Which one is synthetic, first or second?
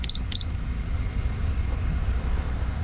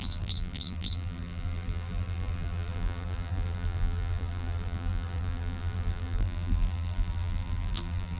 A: second